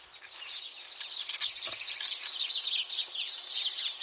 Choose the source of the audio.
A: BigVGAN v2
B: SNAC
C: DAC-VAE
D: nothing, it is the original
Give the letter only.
D